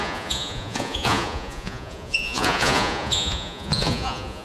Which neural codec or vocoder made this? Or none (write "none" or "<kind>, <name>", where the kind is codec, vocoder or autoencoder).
vocoder, Vocos